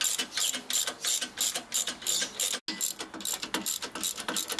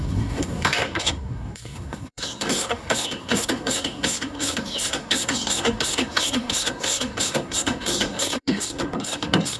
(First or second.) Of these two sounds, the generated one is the second